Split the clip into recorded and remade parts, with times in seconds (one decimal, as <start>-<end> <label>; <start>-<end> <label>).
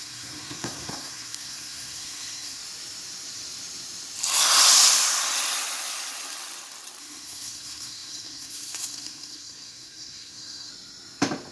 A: 0.0-2.6 remade; 2.6-7.0 recorded; 7.0-10.7 remade; 10.7-11.5 recorded